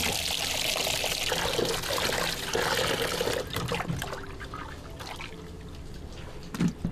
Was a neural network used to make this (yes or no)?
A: no